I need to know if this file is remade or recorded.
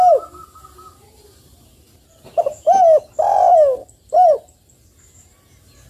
recorded